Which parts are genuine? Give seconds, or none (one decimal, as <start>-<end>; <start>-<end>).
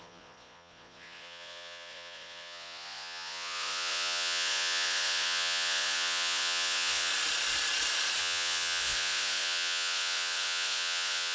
7.1-8.2